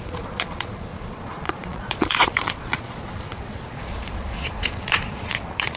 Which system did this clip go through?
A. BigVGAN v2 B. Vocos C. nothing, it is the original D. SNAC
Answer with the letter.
B